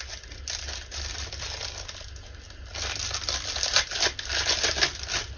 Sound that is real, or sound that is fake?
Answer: real